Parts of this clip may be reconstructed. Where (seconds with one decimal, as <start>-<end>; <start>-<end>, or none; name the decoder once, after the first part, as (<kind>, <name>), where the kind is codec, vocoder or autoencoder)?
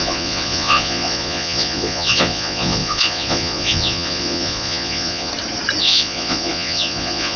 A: 0.0-5.3 (vocoder, Vocos); 5.8-7.4